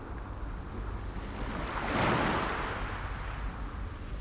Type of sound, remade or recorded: recorded